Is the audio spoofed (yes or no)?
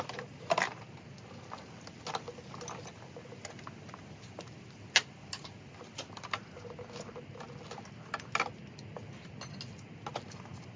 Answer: no